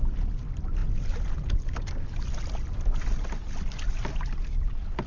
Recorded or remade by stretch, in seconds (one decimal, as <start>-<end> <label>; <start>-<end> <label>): 0.0-5.1 recorded